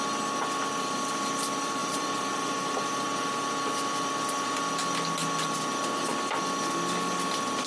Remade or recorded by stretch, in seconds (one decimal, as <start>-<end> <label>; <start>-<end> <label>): 0.0-1.8 recorded; 1.8-3.3 remade; 3.3-7.7 recorded